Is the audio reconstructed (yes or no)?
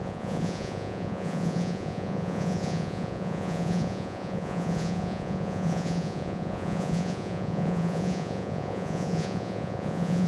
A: yes